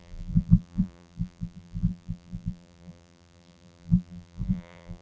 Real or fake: fake